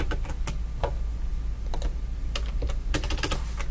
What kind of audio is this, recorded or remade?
recorded